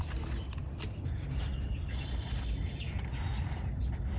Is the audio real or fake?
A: real